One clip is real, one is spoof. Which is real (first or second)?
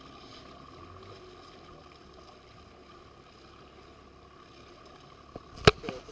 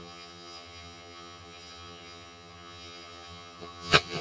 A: first